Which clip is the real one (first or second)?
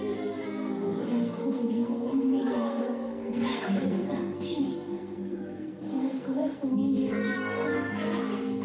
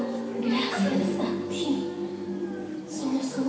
second